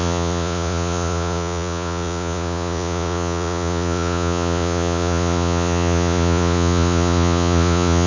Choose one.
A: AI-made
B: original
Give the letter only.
A